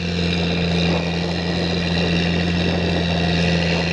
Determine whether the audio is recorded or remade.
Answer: recorded